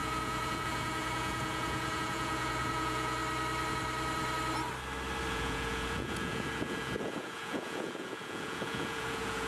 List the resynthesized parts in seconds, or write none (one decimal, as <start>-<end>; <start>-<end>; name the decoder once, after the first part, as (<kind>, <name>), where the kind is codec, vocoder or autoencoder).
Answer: 0.0-3.2 (vocoder, Vocos); 5.3-9.5